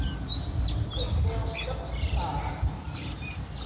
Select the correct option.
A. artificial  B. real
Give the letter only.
B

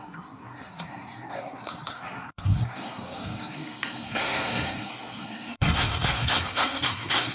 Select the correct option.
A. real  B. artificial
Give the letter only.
B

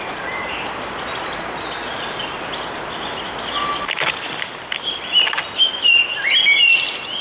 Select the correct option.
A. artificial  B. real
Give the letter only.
B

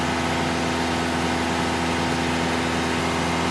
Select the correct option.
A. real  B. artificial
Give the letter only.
A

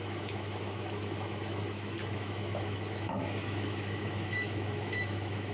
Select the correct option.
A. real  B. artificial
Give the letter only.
B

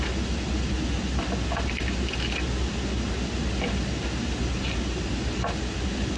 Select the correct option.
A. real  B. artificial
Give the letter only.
A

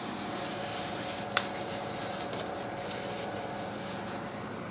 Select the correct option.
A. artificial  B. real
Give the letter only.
A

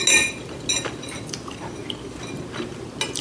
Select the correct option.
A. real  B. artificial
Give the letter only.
A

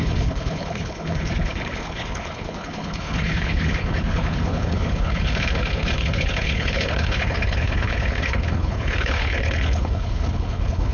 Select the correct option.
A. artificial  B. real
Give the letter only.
A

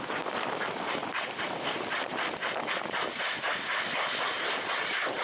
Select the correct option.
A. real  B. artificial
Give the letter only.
B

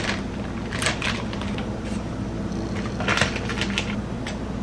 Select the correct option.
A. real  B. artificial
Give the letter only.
A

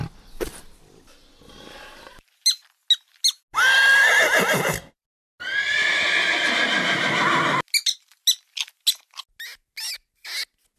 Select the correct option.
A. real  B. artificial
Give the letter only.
A